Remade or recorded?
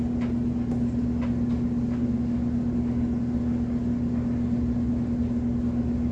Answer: recorded